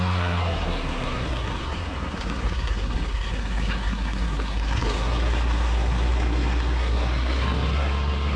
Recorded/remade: remade